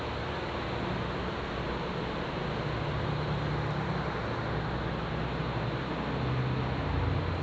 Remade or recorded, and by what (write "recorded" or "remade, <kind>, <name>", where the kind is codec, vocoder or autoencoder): recorded